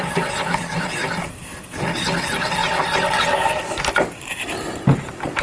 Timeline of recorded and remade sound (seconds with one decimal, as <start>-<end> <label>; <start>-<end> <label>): 0.0-5.4 recorded